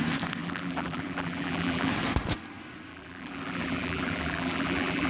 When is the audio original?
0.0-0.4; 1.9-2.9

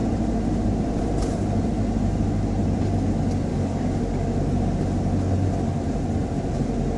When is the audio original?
0.0-3.5; 4.0-7.0

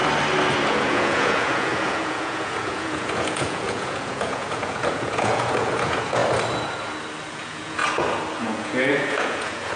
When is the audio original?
0.0-0.7; 6.2-7.3; 7.8-8.4

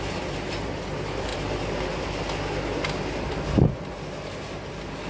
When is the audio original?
0.0-5.1

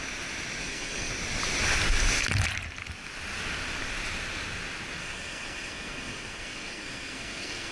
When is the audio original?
0.0-0.6; 1.1-5.0

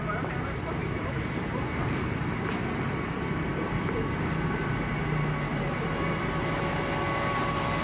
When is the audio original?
0.0-0.8; 3.7-5.5; 6.4-7.8

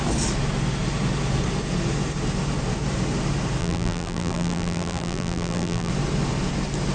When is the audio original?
0.0-3.6; 5.9-6.9

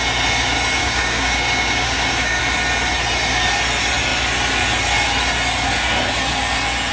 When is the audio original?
0.0-0.8; 2.4-6.9